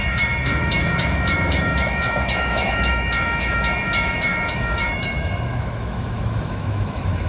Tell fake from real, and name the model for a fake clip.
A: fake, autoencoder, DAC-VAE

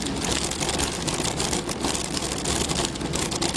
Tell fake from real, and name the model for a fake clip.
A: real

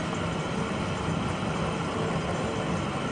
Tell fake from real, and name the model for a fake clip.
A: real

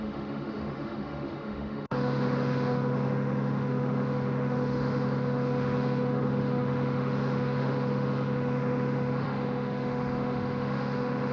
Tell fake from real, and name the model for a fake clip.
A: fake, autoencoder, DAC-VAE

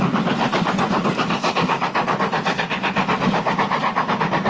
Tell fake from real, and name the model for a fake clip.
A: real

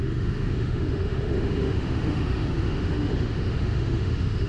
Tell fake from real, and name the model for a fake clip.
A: fake, autoencoder, DAC-VAE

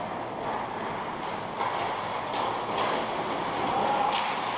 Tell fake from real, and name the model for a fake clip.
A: real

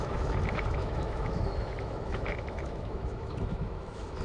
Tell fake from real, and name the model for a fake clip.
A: fake, autoencoder, DAC-VAE